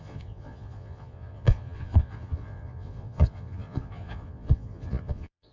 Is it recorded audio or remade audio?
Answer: remade